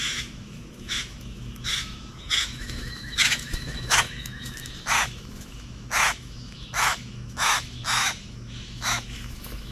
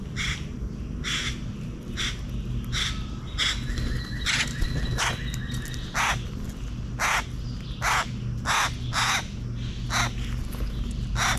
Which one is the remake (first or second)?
first